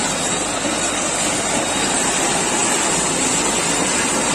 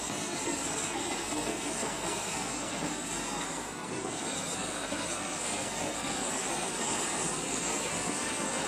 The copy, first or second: second